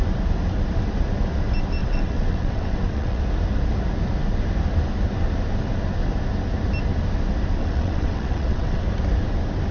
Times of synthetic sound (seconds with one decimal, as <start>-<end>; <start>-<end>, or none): 1.8-3.2; 7.6-8.8